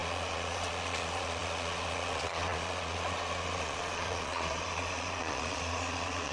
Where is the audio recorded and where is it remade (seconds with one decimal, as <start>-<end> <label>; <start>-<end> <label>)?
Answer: 0.0-6.3 remade